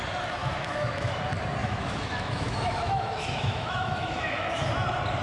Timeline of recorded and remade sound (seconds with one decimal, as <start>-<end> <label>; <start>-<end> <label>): 0.0-0.4 recorded; 0.4-1.2 remade; 1.2-1.6 recorded; 1.6-4.7 remade; 4.7-5.2 recorded